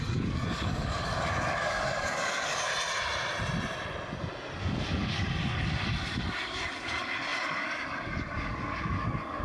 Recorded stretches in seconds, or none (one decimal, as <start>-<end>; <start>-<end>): 2.7-4.6